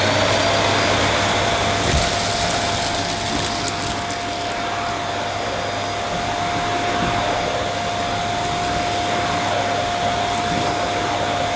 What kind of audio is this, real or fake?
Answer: real